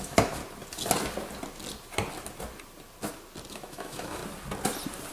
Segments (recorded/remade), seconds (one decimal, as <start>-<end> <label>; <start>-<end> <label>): 0.0-0.4 remade; 0.4-3.5 recorded; 3.5-4.2 remade; 4.2-5.1 recorded